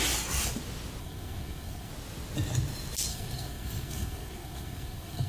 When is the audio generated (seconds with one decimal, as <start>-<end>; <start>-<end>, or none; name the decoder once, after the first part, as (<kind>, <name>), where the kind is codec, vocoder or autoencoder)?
1.0-1.9 (codec, SNAC); 3.1-5.3